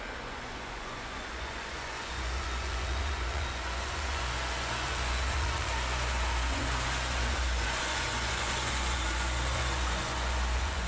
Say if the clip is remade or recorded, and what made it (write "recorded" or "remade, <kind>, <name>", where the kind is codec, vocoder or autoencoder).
remade, vocoder, Vocos